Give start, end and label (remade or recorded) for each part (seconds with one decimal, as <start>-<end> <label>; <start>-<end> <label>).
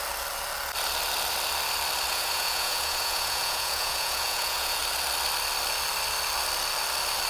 0.0-2.1 recorded; 2.1-4.8 remade; 4.8-7.3 recorded